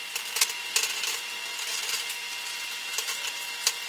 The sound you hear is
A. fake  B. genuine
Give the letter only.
B